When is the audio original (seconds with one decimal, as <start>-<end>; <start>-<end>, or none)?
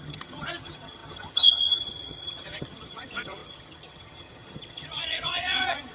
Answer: none